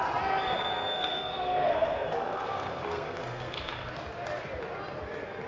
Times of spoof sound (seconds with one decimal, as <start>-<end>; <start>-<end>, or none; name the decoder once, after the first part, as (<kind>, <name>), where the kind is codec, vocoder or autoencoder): 0.6-3.9 (codec, SNAC)